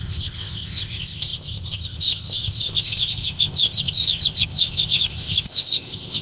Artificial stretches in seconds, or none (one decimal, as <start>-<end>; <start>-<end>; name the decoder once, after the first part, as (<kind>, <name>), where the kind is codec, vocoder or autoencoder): 0.0-6.2 (codec, ZipCodec)